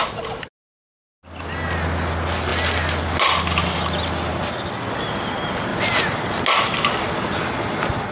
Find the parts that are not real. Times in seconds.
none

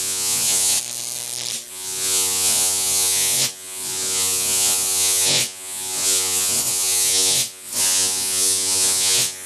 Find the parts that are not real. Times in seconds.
0.0-0.8 (vocoder, Vocos); 1.7-9.5

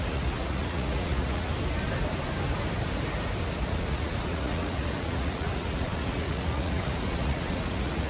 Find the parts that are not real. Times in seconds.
0.0-1.5 (vocoder, Vocos); 3.6-8.1

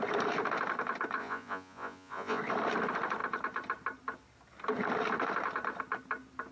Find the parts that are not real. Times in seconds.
1.2-2.4 (vocoder, Vocos)

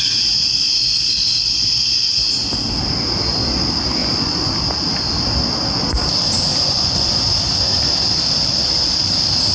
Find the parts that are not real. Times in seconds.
4.0-4.5 (vocoder, Vocos); 6.5-7.4